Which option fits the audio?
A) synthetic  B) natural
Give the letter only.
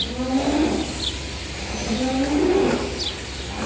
B